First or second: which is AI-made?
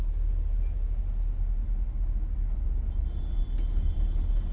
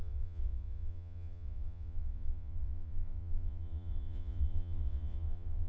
second